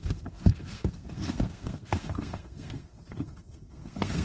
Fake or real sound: fake